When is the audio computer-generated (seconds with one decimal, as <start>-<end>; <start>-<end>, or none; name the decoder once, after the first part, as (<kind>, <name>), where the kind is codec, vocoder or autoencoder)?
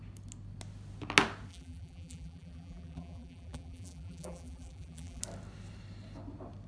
1.5-5.2 (vocoder, BigVGAN v2)